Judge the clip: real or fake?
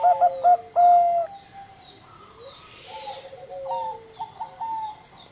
real